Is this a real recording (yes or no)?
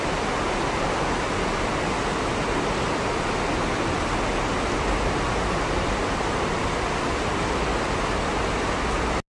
yes